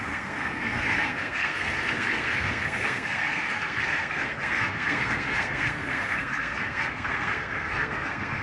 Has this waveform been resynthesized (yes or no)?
yes